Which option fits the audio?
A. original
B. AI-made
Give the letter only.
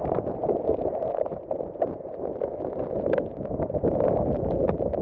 A